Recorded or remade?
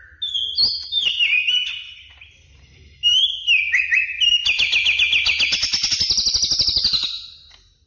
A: recorded